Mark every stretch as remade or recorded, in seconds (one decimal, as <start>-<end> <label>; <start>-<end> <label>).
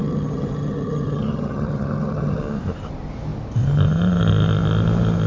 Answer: 0.0-2.4 remade; 2.4-5.3 recorded